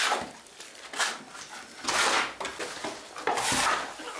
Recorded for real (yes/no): yes